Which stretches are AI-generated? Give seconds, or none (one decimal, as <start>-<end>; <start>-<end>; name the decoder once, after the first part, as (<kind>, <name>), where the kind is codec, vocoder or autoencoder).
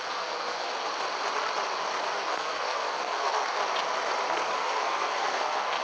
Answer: 0.0-0.7 (codec, SNAC); 2.0-3.6; 4.3-5.8